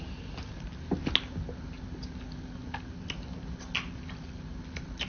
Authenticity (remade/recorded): recorded